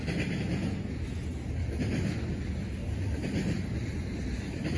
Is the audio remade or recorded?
recorded